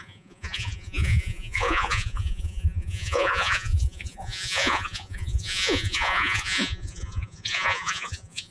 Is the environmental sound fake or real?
fake